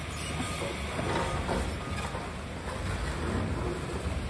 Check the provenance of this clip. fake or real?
real